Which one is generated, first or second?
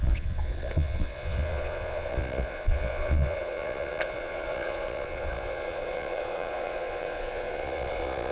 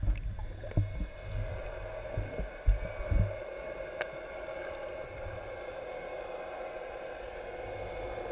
first